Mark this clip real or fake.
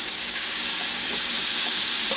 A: fake